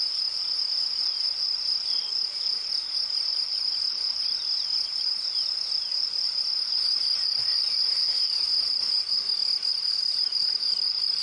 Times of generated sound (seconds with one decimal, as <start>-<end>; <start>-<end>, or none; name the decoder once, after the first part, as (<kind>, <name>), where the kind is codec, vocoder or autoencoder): 3.3-3.8 (vocoder, BigVGAN v2); 9.4-11.2